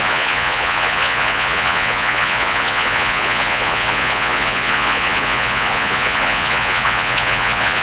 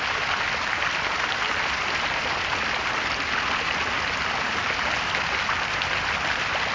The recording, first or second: second